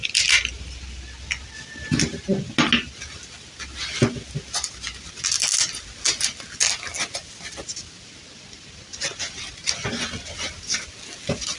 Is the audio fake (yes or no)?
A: no